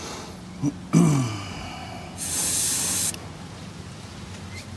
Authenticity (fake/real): real